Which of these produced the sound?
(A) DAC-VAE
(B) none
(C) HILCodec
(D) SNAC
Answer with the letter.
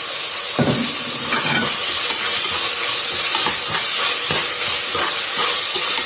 B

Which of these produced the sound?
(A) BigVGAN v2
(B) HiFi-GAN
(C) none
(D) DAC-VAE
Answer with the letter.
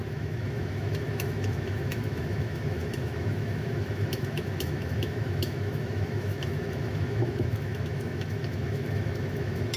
D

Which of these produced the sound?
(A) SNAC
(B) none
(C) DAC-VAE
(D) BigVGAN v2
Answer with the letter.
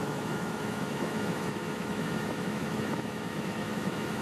C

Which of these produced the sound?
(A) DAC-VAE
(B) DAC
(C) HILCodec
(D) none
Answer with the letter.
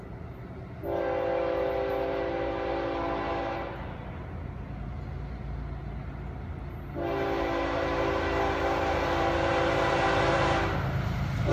D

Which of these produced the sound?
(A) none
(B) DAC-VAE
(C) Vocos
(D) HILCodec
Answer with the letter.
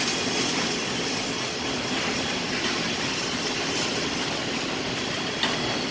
A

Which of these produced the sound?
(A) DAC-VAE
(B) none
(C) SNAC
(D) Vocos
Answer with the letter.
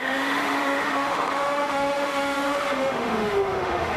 A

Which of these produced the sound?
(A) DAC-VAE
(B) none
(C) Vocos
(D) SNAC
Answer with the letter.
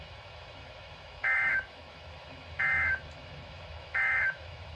A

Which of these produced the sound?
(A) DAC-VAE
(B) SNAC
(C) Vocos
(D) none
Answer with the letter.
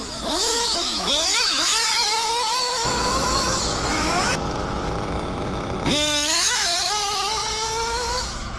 A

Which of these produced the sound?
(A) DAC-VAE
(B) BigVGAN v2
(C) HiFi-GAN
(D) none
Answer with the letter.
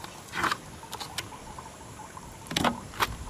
D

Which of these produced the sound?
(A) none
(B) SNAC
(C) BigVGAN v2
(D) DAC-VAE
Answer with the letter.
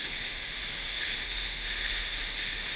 D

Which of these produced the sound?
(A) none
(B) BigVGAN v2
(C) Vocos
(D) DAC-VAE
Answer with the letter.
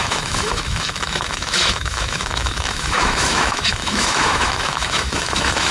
D